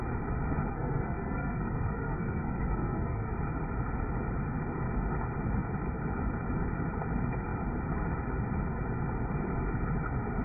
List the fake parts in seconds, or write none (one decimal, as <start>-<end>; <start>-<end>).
0.7-3.3